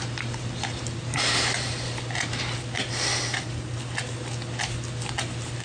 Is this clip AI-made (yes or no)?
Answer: no